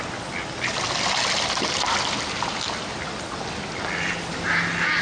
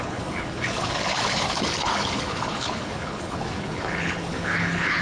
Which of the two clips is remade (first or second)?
second